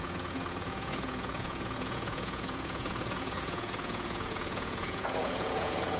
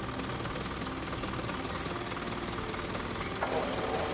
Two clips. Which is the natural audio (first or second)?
second